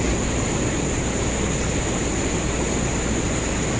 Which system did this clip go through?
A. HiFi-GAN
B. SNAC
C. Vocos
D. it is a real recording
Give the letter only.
D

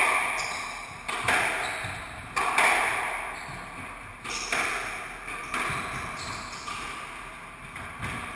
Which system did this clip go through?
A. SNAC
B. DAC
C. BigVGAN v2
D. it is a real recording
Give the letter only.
D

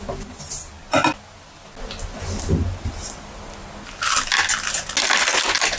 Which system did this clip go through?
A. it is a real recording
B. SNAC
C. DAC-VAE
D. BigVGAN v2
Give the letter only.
A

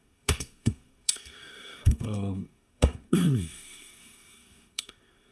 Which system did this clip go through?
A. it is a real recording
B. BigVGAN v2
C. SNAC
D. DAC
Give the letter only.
C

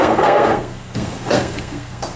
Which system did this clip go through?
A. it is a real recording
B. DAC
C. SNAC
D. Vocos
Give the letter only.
C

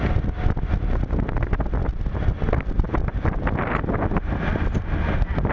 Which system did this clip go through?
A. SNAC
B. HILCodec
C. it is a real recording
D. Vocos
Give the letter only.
C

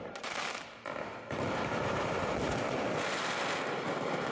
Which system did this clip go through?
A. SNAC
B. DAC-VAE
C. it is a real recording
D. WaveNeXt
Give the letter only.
C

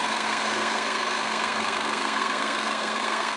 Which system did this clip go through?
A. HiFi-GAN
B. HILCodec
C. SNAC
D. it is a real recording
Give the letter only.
C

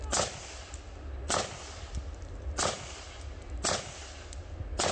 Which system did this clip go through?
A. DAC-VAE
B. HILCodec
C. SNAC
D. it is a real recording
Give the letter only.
D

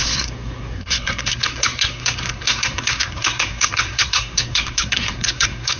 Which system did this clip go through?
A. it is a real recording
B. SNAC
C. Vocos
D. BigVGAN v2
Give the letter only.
B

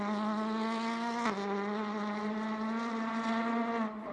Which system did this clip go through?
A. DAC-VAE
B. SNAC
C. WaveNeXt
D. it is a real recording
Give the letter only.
D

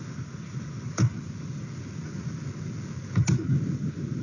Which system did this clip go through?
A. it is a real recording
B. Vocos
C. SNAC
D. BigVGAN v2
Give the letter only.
A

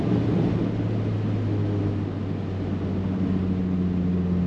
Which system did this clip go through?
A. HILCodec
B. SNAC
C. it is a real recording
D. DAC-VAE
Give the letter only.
C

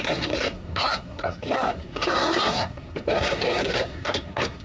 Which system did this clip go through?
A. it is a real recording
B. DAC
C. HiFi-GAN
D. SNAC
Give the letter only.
D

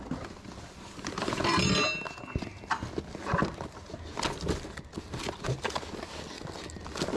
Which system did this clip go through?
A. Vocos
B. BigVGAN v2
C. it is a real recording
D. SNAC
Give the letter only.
C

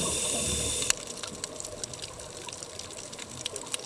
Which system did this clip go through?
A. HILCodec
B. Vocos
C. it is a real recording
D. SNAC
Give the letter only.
C